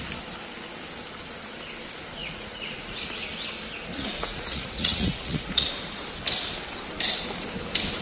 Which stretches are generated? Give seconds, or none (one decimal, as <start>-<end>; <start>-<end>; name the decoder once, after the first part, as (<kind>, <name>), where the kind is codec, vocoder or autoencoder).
2.2-3.1 (vocoder, Vocos); 3.9-5.7